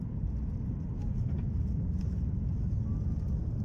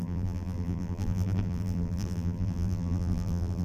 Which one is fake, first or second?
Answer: second